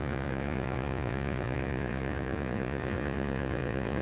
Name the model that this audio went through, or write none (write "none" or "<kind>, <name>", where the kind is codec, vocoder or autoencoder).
vocoder, Vocos